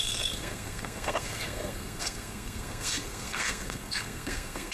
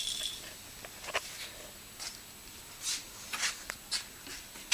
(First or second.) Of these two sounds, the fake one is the first